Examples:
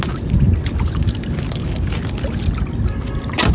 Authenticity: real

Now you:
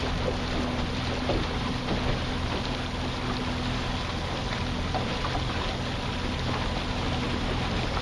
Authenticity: real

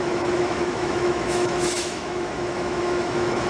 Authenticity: fake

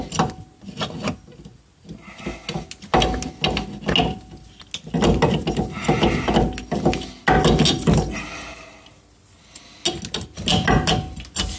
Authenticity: real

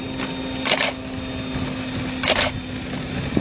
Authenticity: real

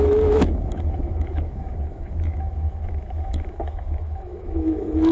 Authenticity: fake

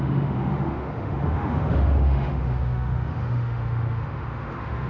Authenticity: fake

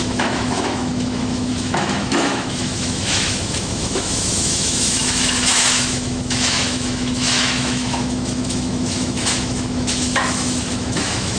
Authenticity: fake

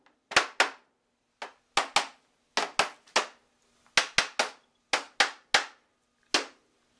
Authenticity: real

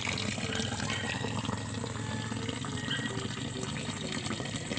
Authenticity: real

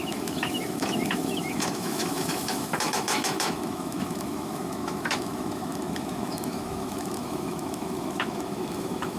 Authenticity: fake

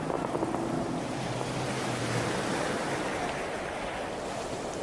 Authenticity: real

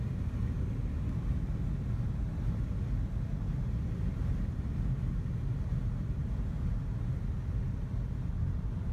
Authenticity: real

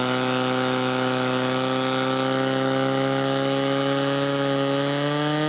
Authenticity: fake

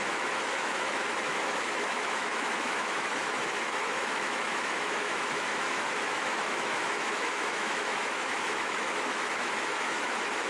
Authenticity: fake